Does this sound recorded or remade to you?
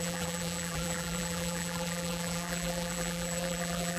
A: remade